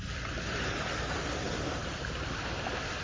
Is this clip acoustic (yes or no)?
no